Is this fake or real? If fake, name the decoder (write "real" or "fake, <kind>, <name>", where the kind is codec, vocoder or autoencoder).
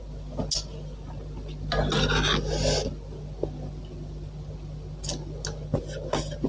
real